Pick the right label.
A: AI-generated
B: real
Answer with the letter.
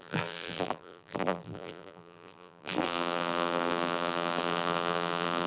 A